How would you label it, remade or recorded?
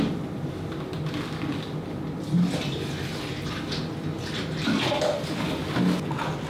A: recorded